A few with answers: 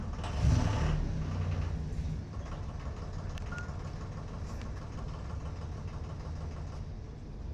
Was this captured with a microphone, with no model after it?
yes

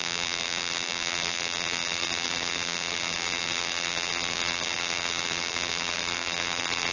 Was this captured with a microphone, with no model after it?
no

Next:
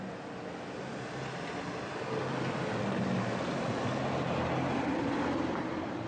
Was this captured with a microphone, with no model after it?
yes